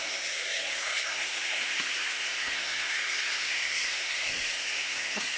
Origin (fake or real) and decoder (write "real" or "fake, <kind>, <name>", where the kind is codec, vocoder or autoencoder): fake, codec, SNAC